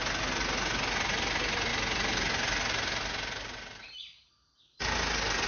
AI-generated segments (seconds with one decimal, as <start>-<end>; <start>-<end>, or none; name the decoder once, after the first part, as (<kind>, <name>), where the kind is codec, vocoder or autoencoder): none